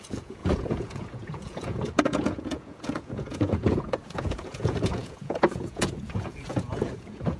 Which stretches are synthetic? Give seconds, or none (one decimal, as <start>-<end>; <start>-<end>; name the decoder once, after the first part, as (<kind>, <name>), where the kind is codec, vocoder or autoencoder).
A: 0.0-7.4 (vocoder, Vocos)